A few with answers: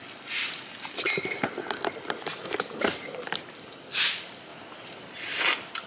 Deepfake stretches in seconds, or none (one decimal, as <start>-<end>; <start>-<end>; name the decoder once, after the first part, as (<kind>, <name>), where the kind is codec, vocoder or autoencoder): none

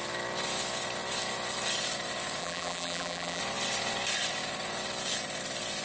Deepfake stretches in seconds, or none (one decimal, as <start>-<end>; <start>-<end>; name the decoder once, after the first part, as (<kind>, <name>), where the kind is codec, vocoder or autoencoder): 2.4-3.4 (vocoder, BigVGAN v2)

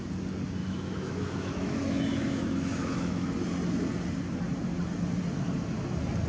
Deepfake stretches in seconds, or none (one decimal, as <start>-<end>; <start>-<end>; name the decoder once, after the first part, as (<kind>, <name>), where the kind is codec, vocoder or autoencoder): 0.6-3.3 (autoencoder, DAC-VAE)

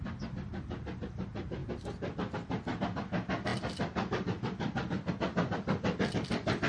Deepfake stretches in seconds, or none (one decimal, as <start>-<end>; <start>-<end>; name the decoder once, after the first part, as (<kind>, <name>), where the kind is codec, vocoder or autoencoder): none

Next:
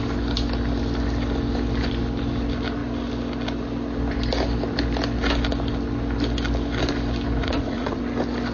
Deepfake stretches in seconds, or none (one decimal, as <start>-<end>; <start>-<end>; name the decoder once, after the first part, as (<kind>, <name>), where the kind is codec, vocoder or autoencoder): 7.4-8.0 (vocoder, Vocos)

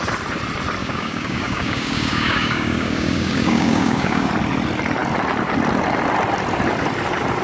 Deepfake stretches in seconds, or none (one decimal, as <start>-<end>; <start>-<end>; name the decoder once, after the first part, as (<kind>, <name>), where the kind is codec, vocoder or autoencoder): 0.8-4.3 (codec, DAC)

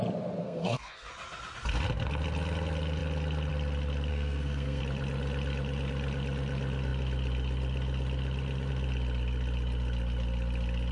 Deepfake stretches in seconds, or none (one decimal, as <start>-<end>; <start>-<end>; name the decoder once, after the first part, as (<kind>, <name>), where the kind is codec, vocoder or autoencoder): 0.4-1.1 (codec, SNAC); 4.1-4.8